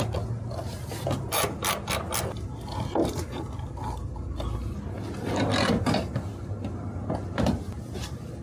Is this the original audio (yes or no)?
yes